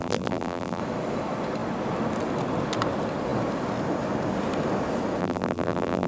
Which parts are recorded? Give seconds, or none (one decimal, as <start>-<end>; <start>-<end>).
0.8-5.2